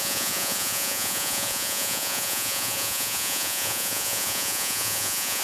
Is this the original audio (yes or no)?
no